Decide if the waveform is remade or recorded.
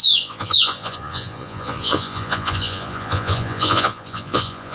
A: remade